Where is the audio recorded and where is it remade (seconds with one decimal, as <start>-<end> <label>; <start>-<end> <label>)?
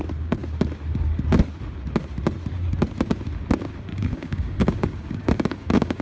0.0-3.9 recorded; 3.9-6.0 remade